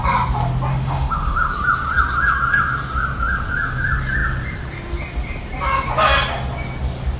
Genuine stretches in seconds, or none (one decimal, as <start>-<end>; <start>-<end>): 0.0-0.7; 1.5-7.2